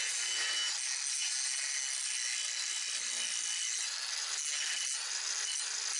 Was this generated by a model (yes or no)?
no